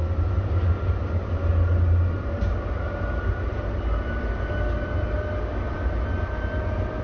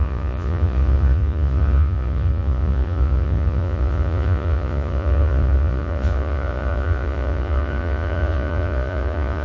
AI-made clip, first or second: second